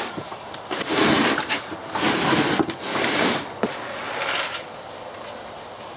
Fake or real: real